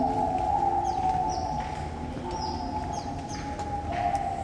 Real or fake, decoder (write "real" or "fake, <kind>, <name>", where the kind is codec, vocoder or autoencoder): real